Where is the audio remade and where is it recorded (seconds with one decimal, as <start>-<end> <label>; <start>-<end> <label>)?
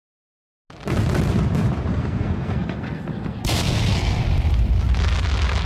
0.0-1.9 recorded; 1.9-4.2 remade; 4.2-5.7 recorded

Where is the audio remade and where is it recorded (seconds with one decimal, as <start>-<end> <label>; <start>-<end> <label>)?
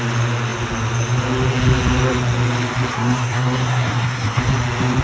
0.0-2.9 recorded; 2.9-4.4 remade; 4.4-5.0 recorded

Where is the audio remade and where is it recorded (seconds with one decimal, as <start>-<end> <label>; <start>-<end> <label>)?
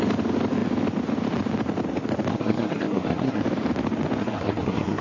0.0-2.3 recorded; 2.3-3.4 remade; 3.4-4.2 recorded; 4.2-5.0 remade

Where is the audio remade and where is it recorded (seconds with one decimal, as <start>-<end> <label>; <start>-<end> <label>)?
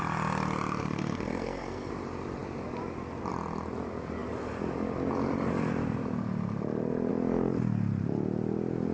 0.0-0.8 recorded; 0.8-1.9 remade; 1.9-8.9 recorded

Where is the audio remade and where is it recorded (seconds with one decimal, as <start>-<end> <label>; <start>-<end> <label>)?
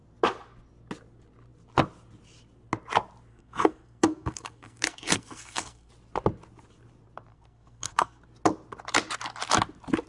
0.0-3.3 recorded; 3.3-5.9 remade; 5.9-7.3 recorded; 7.3-8.2 remade; 8.2-10.1 recorded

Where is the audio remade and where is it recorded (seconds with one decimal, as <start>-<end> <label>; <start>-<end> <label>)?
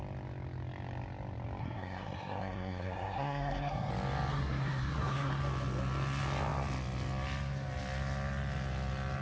0.0-1.6 recorded; 1.6-3.9 remade; 3.9-4.3 recorded; 4.3-5.4 remade; 5.4-9.2 recorded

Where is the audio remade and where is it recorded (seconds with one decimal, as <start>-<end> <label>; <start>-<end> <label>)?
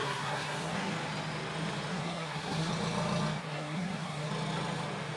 0.0-0.9 remade; 0.9-1.9 recorded; 1.9-2.7 remade; 2.7-3.4 recorded; 3.4-4.3 remade; 4.3-5.2 recorded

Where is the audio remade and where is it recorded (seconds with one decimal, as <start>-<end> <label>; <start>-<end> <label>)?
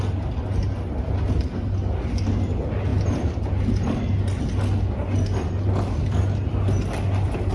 0.0-7.5 recorded